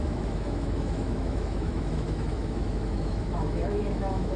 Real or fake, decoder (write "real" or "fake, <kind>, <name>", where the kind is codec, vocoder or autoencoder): fake, autoencoder, DAC-VAE